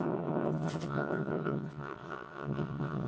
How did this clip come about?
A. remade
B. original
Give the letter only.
A